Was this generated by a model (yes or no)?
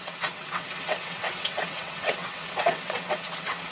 yes